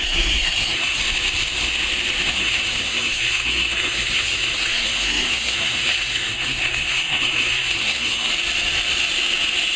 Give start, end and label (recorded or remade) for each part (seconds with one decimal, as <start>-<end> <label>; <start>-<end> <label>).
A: 0.0-1.0 remade; 1.0-2.3 recorded; 2.3-8.3 remade; 8.3-9.8 recorded